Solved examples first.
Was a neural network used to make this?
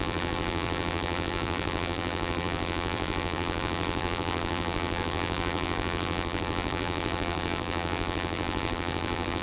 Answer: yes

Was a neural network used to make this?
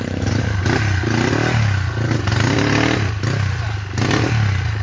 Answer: no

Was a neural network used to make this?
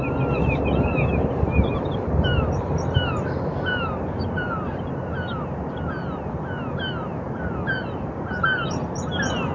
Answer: no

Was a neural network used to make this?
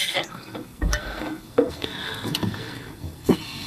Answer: yes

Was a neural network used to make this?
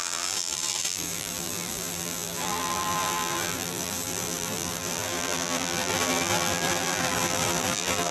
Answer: yes